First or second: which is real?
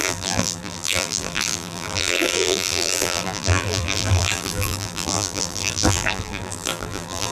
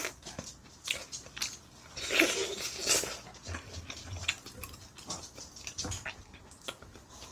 second